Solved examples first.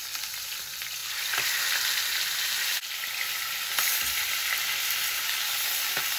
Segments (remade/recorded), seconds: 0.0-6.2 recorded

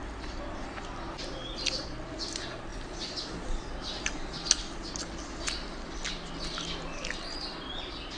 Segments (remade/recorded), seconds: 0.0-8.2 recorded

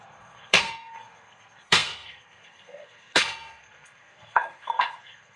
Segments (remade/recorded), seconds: 0.0-5.4 remade

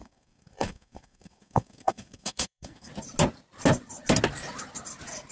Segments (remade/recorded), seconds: 0.0-2.9 remade; 2.9-5.3 recorded

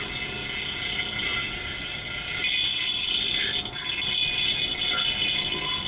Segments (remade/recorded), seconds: 0.0-5.9 recorded